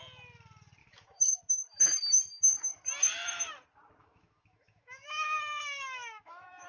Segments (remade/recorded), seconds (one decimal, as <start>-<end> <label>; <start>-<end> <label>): 0.0-0.8 recorded; 0.8-1.4 remade; 1.4-4.0 recorded; 4.0-6.7 remade